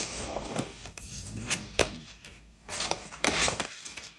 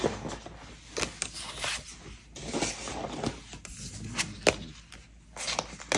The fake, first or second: first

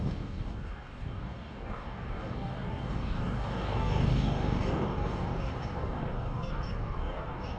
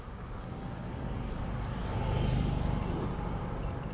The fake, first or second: first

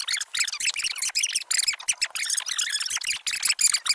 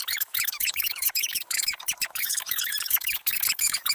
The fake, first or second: second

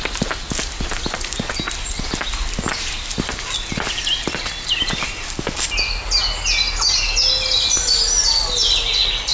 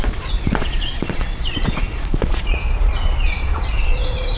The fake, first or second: second